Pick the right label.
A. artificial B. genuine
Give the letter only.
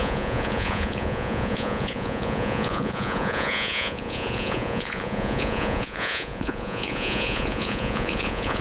A